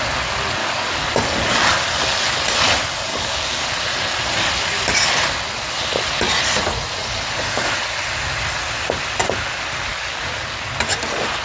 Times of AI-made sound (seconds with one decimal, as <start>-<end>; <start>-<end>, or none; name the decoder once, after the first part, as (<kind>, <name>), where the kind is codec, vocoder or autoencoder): 0.6-1.1 (codec, DAC); 3.1-3.6; 9.9-10.6